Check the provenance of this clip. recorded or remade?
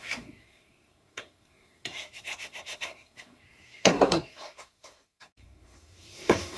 remade